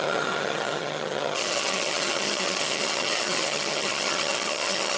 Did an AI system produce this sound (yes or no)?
yes